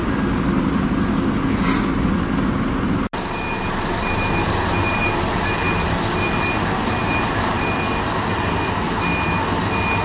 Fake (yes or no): no